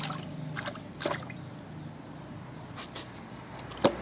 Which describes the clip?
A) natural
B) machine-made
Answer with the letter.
A